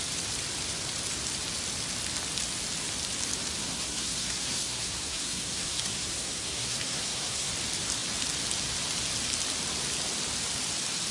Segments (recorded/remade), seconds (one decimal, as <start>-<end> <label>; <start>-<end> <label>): 0.0-3.6 recorded; 3.6-7.5 remade; 7.5-11.1 recorded